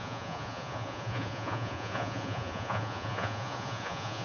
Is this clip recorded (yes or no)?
no